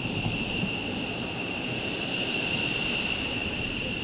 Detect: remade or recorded remade